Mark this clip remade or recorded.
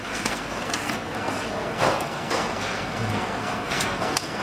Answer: remade